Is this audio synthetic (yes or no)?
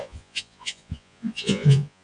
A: yes